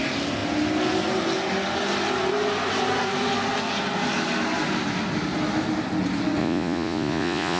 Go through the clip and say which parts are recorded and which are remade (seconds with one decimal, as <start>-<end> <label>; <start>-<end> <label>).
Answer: 0.0-6.4 recorded; 6.4-7.6 remade